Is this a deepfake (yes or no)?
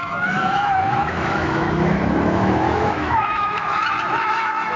yes